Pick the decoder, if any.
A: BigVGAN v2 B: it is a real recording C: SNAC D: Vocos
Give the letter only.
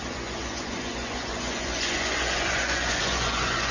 D